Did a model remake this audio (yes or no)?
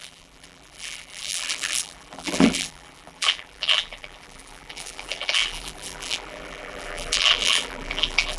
yes